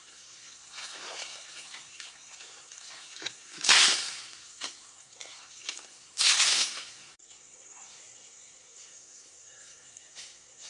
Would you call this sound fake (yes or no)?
yes